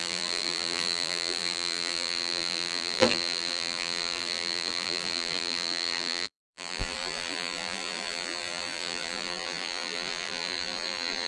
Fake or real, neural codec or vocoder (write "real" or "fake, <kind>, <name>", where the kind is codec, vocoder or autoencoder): fake, vocoder, BigVGAN v2